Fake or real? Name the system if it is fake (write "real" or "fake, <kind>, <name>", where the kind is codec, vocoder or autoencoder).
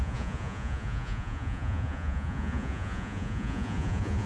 fake, vocoder, Vocos